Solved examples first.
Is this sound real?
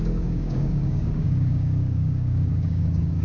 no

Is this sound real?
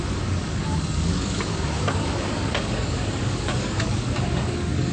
no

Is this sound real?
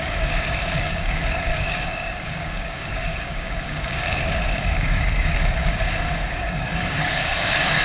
no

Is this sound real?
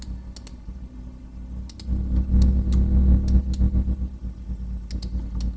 yes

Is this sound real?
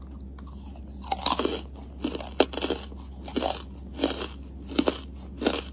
yes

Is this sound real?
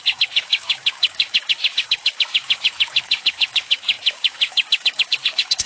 no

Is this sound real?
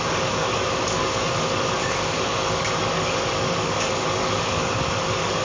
no